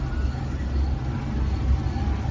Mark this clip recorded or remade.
recorded